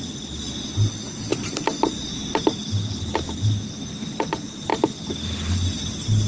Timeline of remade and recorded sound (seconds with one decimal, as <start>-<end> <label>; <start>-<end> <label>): 0.0-1.3 recorded; 1.3-2.0 remade; 2.0-6.3 recorded